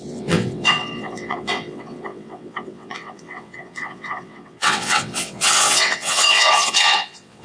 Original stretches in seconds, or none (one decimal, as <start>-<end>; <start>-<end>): none

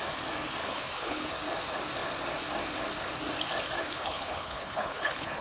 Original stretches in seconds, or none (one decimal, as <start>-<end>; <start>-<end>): 0.0-0.6; 1.3-3.8

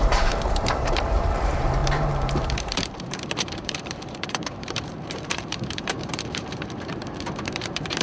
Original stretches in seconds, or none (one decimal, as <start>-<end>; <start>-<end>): none